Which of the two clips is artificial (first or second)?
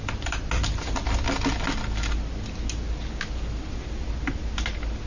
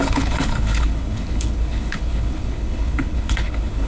second